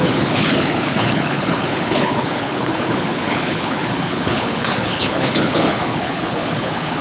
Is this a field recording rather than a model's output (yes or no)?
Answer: no